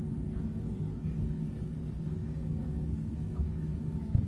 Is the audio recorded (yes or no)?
no